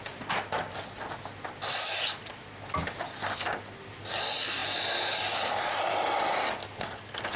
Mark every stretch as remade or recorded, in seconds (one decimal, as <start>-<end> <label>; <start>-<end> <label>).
0.0-7.4 recorded